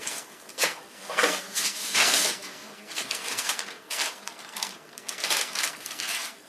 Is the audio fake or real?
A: fake